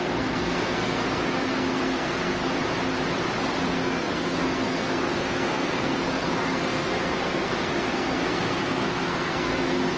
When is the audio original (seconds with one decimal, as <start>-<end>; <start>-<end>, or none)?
2.4-3.6